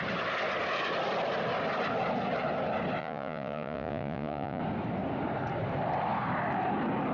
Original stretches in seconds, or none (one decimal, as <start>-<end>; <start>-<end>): 0.0-3.0; 4.6-7.1